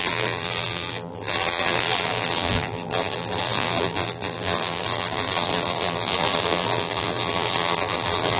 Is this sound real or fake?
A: fake